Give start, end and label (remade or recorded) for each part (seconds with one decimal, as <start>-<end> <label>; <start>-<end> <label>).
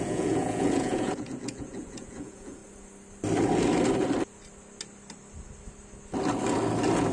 0.0-2.6 remade; 2.6-7.1 recorded